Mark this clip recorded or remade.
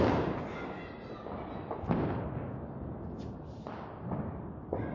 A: recorded